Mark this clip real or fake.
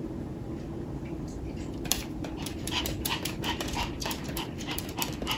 fake